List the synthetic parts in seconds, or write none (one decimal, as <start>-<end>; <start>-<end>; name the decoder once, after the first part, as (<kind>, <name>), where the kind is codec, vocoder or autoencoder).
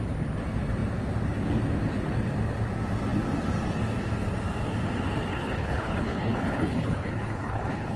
5.3-8.0 (codec, HILCodec)